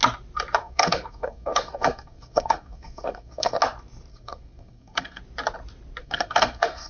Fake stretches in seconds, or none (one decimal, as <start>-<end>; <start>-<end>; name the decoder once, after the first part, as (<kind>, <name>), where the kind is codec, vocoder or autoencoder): 0.6-3.6 (codec, SNAC); 4.1-5.2; 6.0-6.9